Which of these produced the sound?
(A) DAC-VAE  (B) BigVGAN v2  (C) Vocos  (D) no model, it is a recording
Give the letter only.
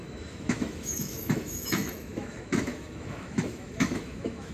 A